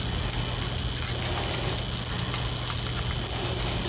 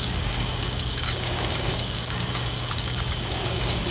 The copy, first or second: second